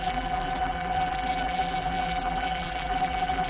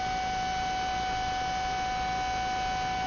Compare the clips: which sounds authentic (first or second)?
second